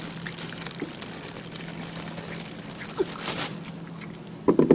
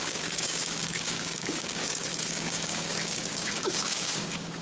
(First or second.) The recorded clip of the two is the first